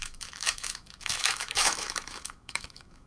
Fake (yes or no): yes